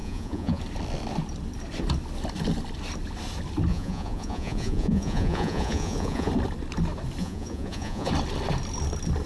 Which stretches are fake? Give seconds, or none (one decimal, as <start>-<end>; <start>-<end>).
0.0-0.6; 3.7-6.3; 7.2-8.1